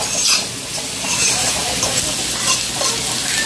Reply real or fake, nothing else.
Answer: fake